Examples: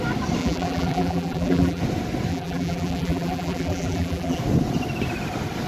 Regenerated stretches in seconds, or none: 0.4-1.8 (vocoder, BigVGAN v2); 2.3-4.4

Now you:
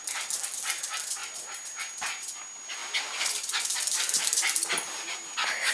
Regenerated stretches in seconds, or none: none

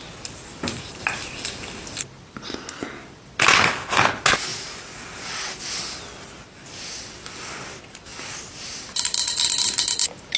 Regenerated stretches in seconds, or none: 4.5-5.8 (vocoder, BigVGAN v2); 8.1-8.6

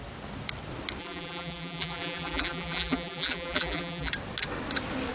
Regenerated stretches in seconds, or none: 1.0-4.1 (vocoder, BigVGAN v2)

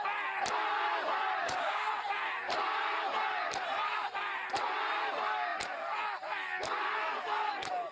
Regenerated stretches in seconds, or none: 1.4-1.9 (codec, DAC)

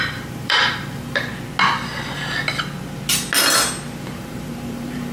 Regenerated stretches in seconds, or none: 0.0-1.3 (vocoder, BigVGAN v2); 4.0-5.1